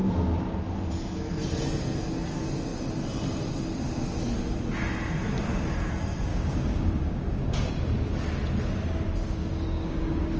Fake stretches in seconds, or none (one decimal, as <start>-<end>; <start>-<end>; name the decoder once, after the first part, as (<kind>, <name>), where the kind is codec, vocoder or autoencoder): 6.3-7.7 (codec, DAC); 9.4-10.4